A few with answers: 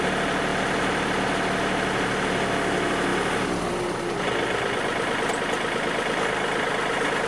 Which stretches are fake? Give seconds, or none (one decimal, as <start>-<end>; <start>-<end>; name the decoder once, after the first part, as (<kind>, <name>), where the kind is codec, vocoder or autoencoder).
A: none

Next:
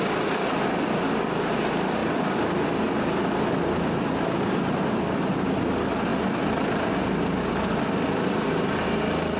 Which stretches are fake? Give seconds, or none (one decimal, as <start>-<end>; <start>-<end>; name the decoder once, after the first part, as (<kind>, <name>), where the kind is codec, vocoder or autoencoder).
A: 2.0-5.3 (vocoder, BigVGAN v2)

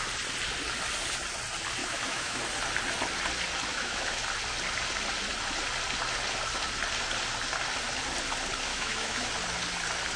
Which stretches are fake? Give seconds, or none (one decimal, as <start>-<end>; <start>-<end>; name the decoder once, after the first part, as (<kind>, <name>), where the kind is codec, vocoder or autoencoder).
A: 1.8-2.4 (autoencoder, DAC-VAE); 3.7-4.2; 8.7-9.3

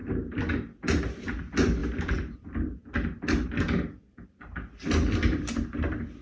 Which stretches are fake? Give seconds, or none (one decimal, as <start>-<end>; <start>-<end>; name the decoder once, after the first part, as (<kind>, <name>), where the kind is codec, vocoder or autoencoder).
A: none

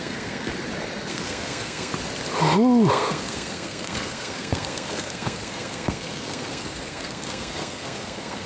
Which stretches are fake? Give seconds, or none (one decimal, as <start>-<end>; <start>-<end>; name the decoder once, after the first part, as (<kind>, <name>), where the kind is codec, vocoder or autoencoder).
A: 0.0-0.5 (codec, SNAC); 1.1-1.9; 2.9-8.5